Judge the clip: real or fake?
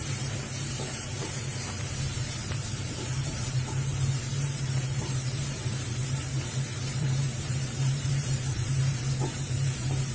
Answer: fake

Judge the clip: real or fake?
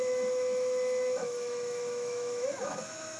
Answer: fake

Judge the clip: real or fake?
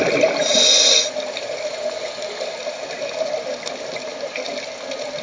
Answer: real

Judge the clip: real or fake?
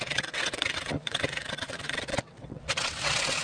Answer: fake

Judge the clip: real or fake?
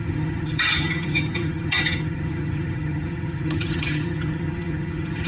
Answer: fake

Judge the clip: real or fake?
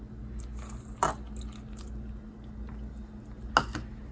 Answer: real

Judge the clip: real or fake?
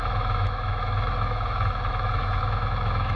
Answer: fake